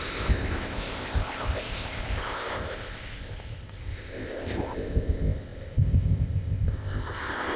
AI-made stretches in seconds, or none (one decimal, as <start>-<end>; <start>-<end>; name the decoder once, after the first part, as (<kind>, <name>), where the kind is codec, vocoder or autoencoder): 0.0-7.6 (codec, ZipCodec)

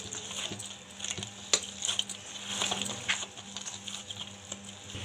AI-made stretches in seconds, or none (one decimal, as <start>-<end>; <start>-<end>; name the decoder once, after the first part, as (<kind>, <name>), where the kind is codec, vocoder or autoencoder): none

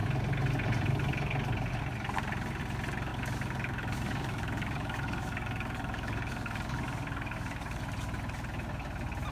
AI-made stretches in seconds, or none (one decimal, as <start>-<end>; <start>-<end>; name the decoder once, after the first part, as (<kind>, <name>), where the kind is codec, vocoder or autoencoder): 3.1-7.8 (codec, DAC)

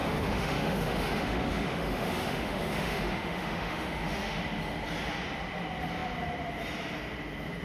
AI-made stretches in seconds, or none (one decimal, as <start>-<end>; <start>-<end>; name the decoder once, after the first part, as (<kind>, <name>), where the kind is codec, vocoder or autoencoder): 0.0-4.4 (autoencoder, DAC-VAE)

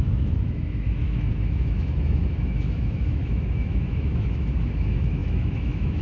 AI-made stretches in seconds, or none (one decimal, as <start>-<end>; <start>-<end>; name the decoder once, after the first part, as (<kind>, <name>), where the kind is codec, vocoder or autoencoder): 0.0-6.0 (autoencoder, DAC-VAE)

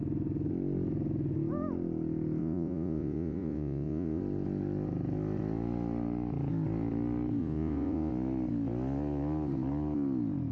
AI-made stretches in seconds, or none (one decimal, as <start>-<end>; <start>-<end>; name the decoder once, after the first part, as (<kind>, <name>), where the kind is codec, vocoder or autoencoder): 2.4-4.2 (vocoder, Vocos); 7.4-8.1

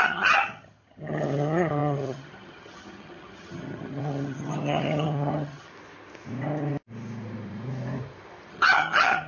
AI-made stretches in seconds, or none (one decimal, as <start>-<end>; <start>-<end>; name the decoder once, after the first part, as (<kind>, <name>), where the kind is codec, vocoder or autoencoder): 0.0-5.7 (vocoder, HiFi-GAN); 8.5-9.3

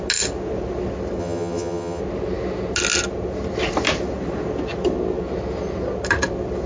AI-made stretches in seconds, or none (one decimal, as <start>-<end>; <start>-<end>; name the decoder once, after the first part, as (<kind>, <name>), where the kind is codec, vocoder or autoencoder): 1.2-2.0 (vocoder, HiFi-GAN)